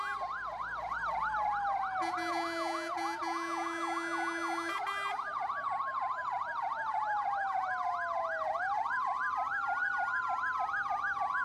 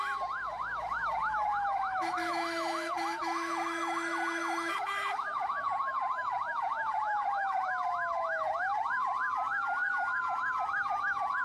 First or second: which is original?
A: first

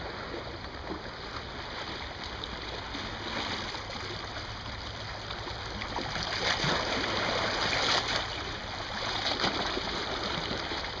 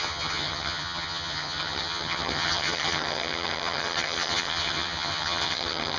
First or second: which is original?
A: first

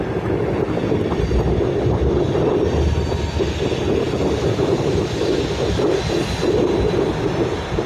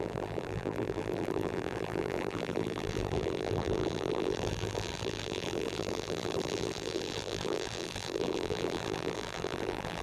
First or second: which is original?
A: first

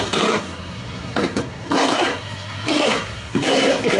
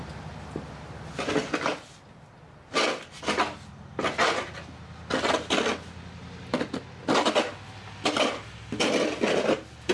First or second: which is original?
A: second